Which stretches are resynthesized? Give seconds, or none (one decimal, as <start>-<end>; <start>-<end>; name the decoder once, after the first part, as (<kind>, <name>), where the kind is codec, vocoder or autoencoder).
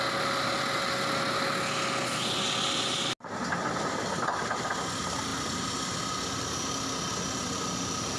none